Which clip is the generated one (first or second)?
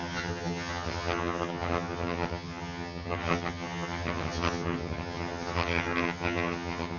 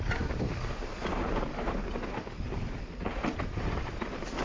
first